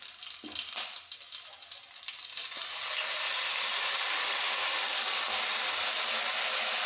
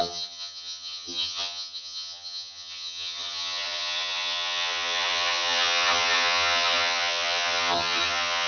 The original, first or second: first